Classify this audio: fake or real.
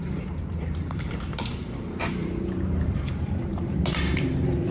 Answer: fake